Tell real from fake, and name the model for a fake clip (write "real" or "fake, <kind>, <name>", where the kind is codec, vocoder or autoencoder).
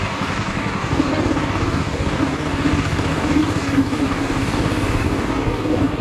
fake, codec, DAC